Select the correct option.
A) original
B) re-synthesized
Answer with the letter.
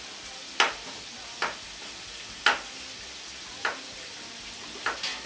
A